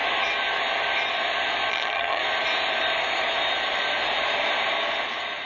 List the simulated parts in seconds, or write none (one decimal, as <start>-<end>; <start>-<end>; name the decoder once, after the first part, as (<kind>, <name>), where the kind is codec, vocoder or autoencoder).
1.7-2.2 (vocoder, HiFi-GAN)

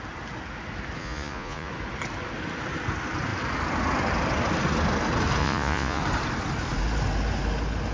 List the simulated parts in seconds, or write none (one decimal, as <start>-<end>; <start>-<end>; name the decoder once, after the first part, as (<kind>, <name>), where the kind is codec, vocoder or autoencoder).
1.0-1.7 (vocoder, Vocos); 5.4-6.0

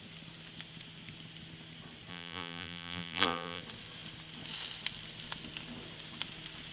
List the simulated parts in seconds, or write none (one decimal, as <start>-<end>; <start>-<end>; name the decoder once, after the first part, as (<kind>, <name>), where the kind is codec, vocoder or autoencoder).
2.1-3.6 (vocoder, BigVGAN v2)